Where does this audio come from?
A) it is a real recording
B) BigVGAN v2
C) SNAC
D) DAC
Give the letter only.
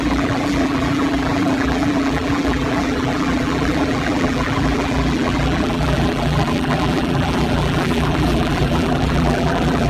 B